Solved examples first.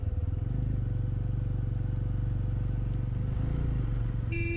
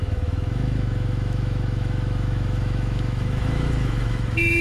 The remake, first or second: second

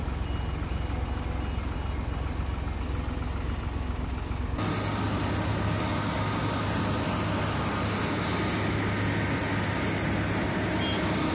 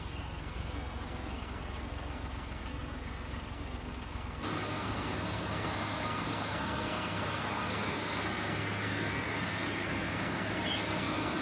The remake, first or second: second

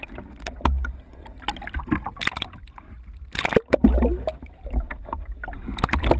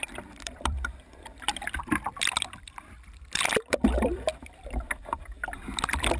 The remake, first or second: second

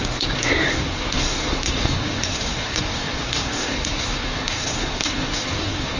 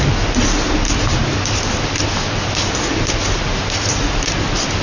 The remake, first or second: first